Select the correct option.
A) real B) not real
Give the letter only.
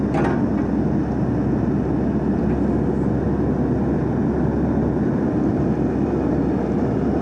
A